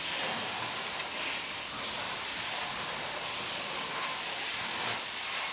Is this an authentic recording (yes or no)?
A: yes